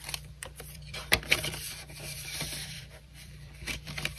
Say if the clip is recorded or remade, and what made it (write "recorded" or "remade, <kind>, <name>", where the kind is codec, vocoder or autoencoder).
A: remade, vocoder, BigVGAN v2